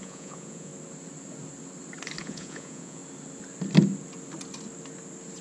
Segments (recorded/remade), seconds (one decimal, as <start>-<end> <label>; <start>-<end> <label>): 0.0-0.7 remade; 0.7-2.2 recorded; 2.2-3.0 remade; 3.0-5.4 recorded